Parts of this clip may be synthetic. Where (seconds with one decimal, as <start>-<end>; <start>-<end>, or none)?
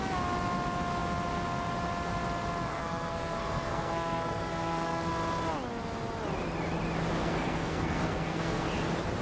2.7-5.0; 7.2-8.7